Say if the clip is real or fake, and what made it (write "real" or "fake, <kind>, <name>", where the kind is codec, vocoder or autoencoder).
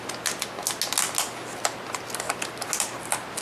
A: real